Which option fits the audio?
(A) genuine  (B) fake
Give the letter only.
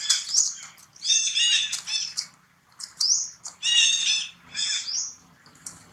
A